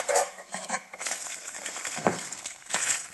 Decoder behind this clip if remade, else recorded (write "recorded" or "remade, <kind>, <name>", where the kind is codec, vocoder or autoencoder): remade, codec, SNAC